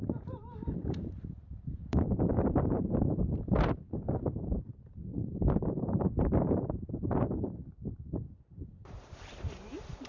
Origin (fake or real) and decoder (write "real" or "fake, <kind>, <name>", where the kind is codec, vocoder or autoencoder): fake, vocoder, BigVGAN v2